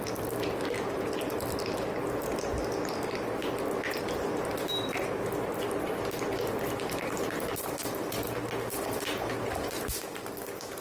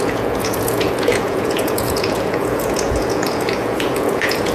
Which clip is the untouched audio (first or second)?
first